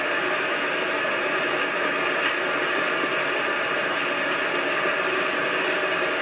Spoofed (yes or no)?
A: no